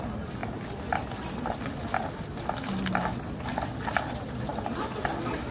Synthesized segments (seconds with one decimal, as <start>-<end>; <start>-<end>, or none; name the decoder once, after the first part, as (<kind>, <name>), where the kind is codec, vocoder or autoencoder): none